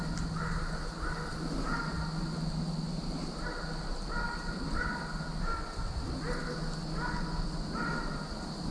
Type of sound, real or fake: real